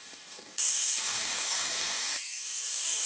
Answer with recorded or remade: remade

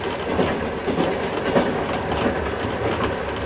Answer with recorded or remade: recorded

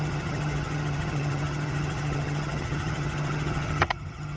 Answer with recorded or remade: remade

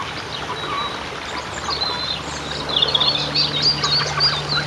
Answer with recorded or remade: recorded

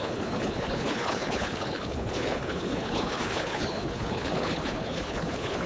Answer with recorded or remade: remade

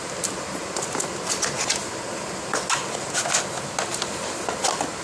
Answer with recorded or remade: recorded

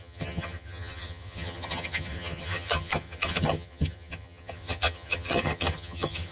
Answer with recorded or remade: remade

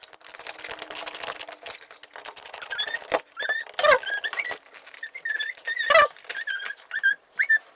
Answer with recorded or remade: recorded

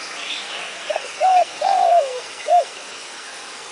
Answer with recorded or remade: remade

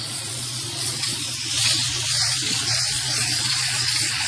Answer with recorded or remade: remade